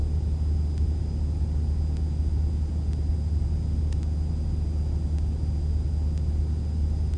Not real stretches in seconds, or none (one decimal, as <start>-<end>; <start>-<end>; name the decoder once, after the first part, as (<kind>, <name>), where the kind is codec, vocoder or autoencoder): none